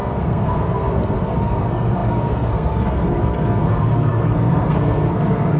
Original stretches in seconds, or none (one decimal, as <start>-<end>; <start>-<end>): none